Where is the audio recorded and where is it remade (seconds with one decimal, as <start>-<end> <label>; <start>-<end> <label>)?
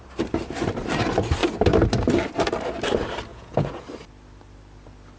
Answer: 0.0-3.3 recorded; 3.3-3.8 remade; 3.8-5.2 recorded